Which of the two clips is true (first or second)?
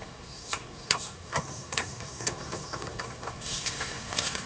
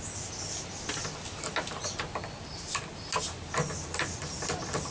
second